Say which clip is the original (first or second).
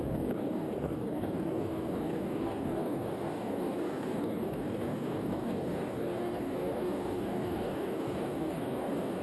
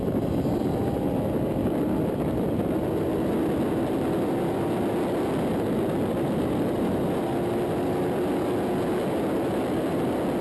second